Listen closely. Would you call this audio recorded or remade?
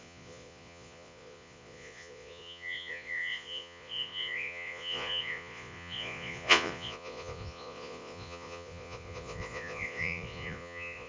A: remade